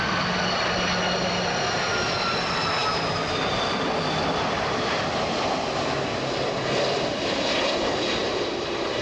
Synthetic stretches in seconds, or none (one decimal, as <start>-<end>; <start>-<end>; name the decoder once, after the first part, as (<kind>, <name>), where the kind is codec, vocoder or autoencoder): 8.2-9.0 (vocoder, BigVGAN v2)